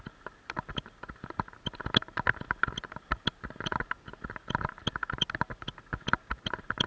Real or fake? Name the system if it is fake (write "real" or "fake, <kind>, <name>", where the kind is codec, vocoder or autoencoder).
real